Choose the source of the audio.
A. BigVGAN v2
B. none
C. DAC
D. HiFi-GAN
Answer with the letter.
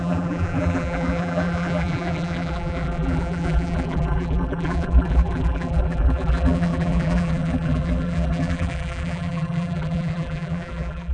A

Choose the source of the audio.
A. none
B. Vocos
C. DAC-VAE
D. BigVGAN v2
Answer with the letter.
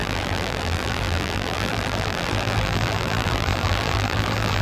D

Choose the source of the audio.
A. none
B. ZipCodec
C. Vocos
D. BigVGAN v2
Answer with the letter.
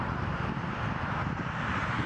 A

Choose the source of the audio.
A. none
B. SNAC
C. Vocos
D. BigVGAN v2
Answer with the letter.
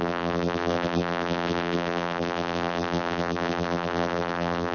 D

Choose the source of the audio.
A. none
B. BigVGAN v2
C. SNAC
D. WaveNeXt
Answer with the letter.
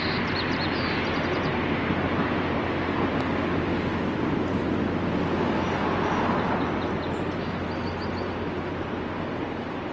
A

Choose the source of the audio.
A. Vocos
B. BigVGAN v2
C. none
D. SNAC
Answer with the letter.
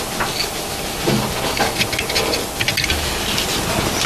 C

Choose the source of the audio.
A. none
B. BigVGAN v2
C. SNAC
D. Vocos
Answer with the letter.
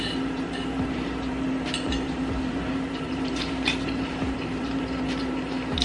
B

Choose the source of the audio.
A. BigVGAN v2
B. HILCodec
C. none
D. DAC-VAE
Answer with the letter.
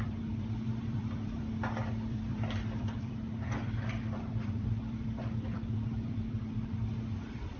A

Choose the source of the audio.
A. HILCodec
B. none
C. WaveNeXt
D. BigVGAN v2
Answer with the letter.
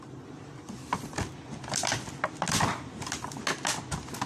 B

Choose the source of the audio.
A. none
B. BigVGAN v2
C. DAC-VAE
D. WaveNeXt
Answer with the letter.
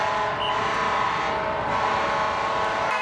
A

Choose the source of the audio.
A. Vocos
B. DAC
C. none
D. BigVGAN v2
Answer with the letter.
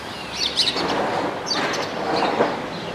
C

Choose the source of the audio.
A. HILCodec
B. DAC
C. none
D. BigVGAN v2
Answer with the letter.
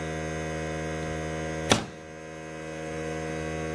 C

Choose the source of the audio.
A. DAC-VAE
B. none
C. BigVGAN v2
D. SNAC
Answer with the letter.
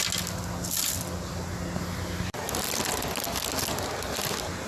B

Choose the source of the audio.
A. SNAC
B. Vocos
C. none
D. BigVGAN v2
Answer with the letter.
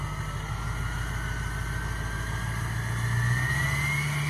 C